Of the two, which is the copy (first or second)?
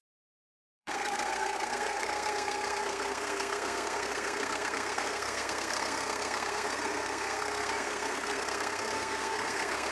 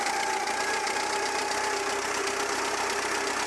first